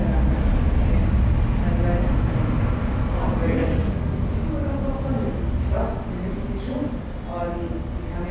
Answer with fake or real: real